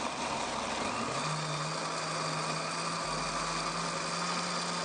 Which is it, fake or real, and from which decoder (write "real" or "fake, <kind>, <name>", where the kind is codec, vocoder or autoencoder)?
real